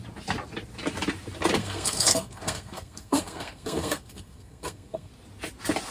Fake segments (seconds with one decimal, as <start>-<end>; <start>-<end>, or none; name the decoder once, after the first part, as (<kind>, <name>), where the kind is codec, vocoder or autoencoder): 1.6-5.1 (codec, SNAC)